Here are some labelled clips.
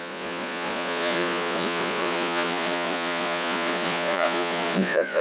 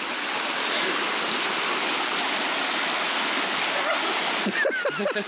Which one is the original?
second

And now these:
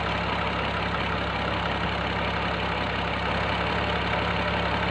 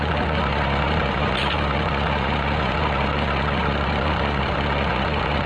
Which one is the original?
first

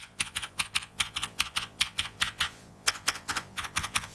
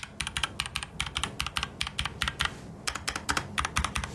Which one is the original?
second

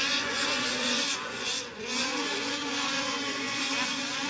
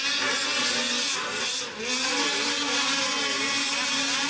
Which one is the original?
second